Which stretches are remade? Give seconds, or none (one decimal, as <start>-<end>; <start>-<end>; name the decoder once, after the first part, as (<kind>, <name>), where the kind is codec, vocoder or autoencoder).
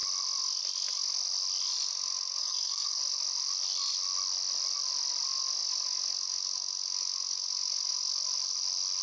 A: 2.4-3.0 (codec, SNAC)